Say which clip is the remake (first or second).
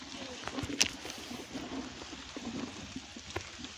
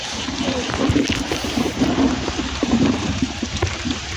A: second